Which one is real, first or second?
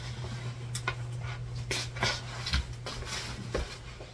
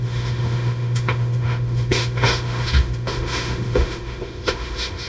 first